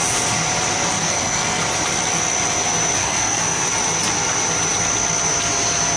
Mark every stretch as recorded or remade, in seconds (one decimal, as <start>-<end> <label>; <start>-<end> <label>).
0.0-1.0 recorded; 1.0-1.6 remade; 1.6-3.0 recorded; 3.0-3.6 remade; 3.6-6.0 recorded